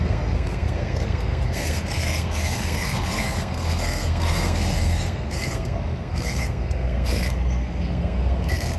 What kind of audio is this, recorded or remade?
remade